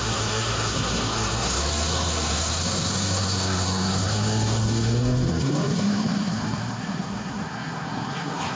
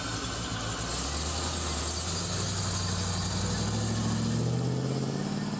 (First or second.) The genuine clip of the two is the second